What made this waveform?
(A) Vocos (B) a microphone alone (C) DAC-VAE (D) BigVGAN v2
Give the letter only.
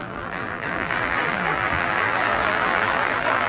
D